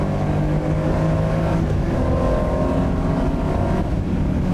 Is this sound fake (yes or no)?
yes